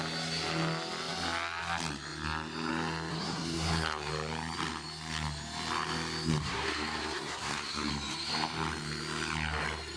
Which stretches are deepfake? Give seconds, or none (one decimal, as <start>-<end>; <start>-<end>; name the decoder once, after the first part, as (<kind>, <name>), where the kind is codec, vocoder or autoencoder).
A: 3.1-4.1 (codec, SNAC); 6.3-7.9